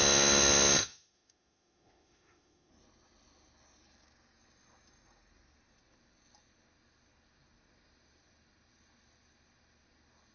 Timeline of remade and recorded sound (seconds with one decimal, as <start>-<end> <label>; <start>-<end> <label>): 0.0-0.8 recorded; 0.8-2.7 remade; 2.7-10.3 recorded